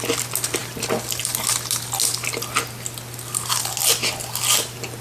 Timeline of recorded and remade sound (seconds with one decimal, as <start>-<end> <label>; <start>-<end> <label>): 0.0-5.0 recorded